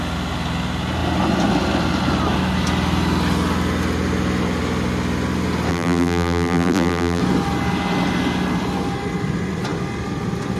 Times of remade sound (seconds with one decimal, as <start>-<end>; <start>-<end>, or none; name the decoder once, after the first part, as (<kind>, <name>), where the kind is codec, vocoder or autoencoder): 5.7-7.2 (vocoder, BigVGAN v2)